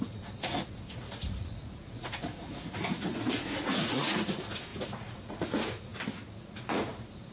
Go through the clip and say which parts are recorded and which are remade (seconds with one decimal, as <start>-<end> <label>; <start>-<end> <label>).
0.0-5.9 remade; 5.9-6.4 recorded; 6.4-7.3 remade